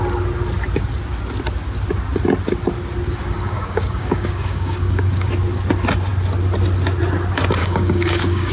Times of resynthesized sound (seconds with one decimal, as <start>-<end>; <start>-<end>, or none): 3.2-5.3; 7.6-8.5